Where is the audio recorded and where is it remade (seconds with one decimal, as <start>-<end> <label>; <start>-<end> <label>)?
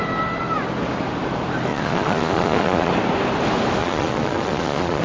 0.0-1.7 recorded; 1.7-2.9 remade; 2.9-3.8 recorded; 3.8-5.0 remade